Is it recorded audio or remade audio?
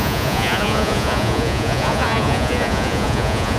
remade